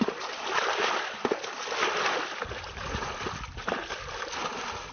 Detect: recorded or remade recorded